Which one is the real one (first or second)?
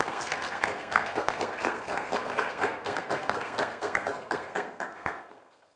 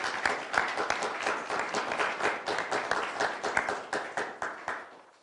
second